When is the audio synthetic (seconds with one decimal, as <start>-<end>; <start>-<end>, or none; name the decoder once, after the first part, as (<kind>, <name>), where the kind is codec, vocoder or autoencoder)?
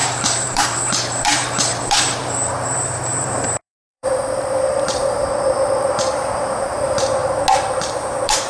0.0-5.2 (vocoder, BigVGAN v2); 5.8-7.2; 7.9-8.5